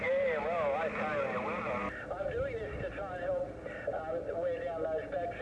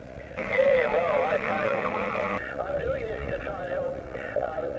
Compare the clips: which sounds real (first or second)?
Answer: first